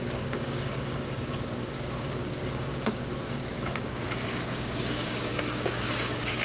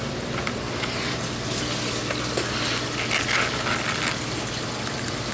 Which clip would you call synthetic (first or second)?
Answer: first